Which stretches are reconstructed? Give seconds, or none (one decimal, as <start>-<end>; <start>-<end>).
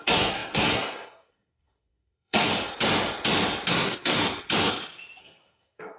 0.0-2.5; 3.7-4.2; 5.2-6.0